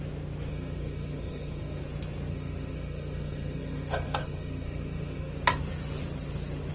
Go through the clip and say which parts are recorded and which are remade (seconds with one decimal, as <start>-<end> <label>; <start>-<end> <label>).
0.0-0.5 recorded; 0.5-1.8 remade; 1.8-2.3 recorded; 2.3-5.3 remade; 5.3-6.7 recorded